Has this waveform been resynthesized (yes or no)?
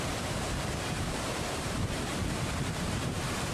yes